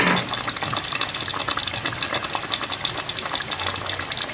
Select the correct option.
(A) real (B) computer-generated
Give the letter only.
A